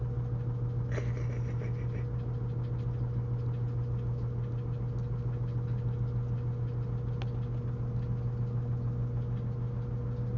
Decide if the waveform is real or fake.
real